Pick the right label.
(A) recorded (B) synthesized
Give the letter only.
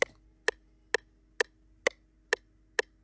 A